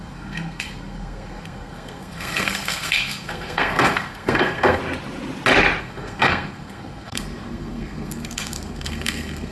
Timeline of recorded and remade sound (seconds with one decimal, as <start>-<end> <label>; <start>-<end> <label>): 0.0-4.8 remade; 4.8-5.8 recorded; 5.8-9.5 remade